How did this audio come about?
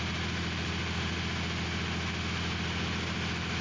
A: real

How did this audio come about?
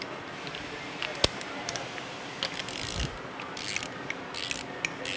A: real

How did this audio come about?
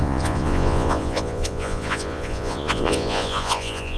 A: fake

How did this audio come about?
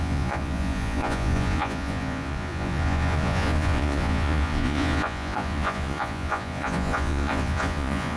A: fake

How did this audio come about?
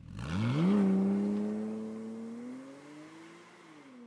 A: real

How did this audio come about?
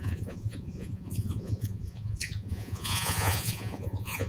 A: fake